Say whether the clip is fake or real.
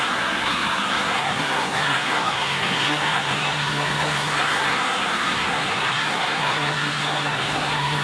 fake